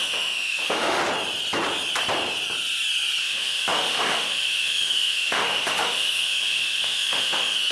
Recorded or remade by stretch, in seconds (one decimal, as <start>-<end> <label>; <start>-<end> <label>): 0.0-1.0 remade; 1.0-3.2 recorded; 3.2-7.7 remade